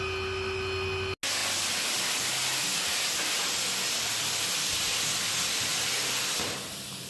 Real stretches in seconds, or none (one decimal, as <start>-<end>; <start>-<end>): 0.0-7.1